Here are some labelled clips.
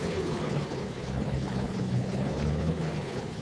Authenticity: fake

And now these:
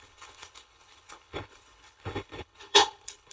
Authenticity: fake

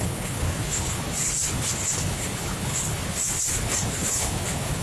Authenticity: fake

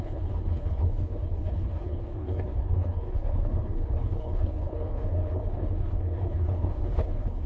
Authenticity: fake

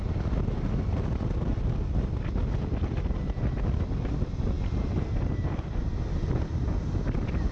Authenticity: real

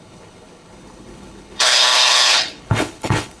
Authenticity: fake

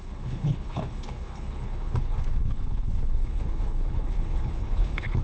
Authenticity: fake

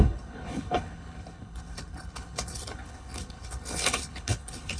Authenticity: fake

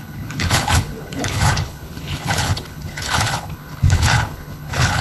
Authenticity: fake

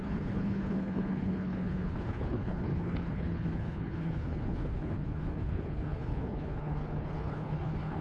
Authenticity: fake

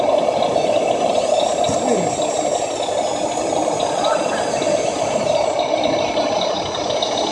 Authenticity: real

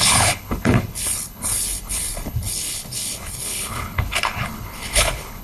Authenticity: fake